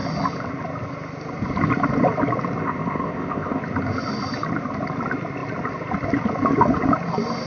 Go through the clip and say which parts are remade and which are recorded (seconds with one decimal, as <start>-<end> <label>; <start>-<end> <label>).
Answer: 0.0-2.6 recorded; 2.6-3.6 remade; 3.6-7.5 recorded